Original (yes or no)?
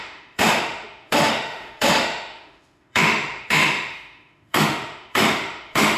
no